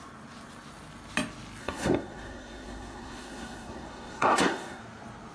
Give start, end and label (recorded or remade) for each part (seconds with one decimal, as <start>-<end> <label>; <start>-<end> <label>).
0.0-1.6 recorded; 1.6-4.8 remade; 4.8-5.3 recorded